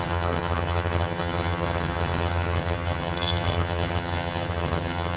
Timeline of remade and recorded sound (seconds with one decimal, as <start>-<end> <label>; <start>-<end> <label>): 0.0-5.2 remade